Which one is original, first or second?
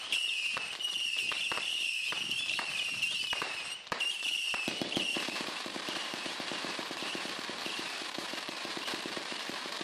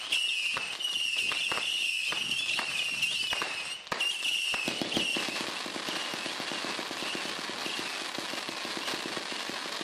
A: second